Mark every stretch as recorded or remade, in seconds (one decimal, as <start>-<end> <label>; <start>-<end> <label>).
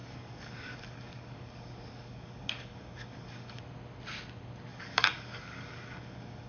0.0-3.6 remade; 3.6-4.7 recorded; 4.7-6.5 remade